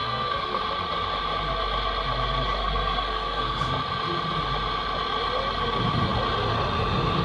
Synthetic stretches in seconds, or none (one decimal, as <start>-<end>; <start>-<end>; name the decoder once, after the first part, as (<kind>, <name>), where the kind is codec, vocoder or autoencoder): 0.0-0.6 (codec, SNAC); 2.6-3.7